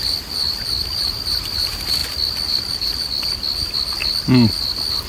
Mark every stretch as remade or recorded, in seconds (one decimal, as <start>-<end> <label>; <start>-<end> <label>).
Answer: 0.0-5.1 recorded